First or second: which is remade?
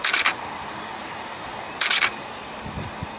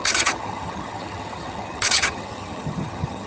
second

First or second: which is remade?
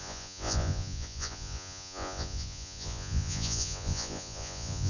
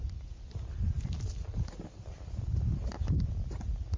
first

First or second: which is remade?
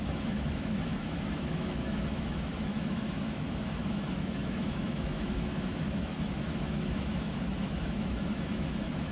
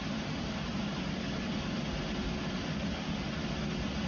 first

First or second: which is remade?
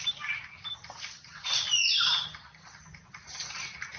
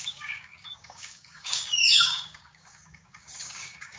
second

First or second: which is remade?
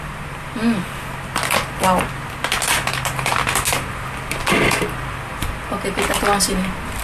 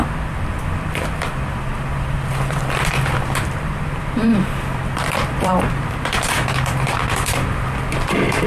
second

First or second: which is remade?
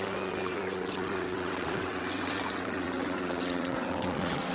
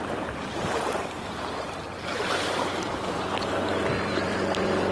first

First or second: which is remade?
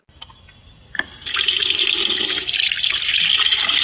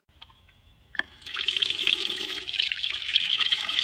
second